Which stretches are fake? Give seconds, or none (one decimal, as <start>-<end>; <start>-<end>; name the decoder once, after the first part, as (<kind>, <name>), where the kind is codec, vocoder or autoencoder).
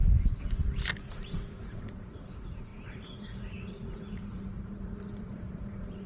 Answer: 1.1-6.1 (vocoder, Vocos)